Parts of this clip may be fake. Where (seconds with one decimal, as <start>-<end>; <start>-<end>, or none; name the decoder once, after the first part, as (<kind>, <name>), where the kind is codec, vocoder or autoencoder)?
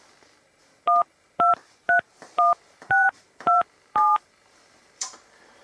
2.1-5.6 (vocoder, BigVGAN v2)